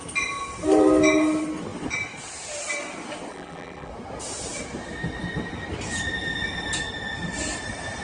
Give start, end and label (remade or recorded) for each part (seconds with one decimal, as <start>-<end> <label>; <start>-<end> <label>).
0.0-3.3 recorded; 3.3-3.9 remade; 3.9-8.0 recorded